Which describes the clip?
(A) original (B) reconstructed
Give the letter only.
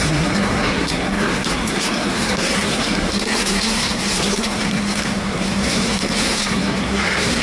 B